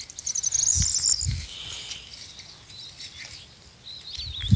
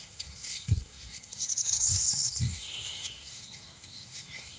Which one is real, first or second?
first